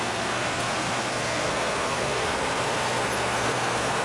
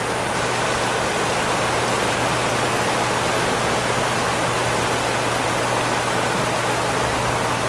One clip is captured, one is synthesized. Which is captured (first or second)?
second